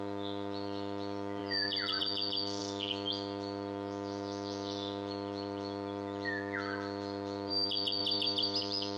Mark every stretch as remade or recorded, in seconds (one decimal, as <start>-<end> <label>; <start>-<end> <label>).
0.0-8.0 remade; 8.0-8.6 recorded; 8.6-9.0 remade